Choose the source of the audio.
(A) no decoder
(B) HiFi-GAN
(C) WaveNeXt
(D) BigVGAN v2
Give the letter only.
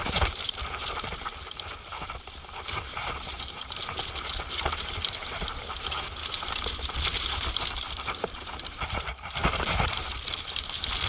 D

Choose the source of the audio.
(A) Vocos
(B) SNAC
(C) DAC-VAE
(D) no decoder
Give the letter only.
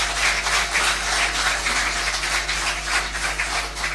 D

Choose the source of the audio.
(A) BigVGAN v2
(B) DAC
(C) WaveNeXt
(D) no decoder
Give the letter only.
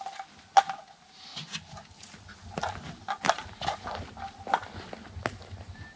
D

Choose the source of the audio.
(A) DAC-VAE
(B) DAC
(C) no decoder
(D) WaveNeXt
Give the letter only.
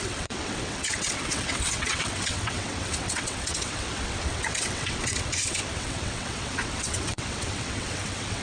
D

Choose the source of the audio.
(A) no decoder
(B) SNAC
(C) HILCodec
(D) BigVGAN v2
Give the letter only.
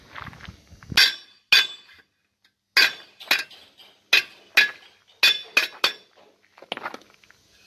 A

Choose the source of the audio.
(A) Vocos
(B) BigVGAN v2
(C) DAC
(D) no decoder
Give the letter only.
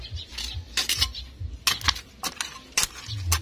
D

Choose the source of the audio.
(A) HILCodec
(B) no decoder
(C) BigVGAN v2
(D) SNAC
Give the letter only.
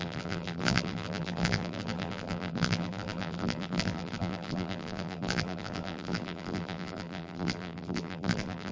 C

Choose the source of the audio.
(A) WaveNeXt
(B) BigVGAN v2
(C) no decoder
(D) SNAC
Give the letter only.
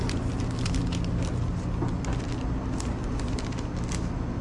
C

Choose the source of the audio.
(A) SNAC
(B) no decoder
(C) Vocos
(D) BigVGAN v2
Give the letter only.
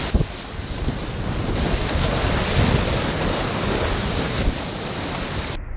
B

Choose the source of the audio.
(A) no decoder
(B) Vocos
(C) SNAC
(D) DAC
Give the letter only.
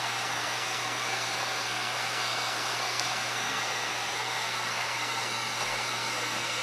C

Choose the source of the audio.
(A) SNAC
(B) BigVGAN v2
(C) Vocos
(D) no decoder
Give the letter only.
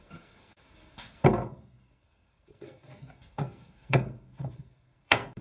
A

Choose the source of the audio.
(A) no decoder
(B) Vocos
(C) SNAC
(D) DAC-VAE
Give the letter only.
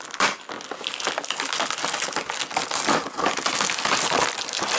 A